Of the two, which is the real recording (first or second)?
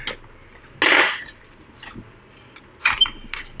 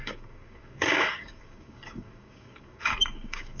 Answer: first